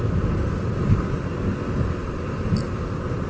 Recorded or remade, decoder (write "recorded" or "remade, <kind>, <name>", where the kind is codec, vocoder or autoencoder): recorded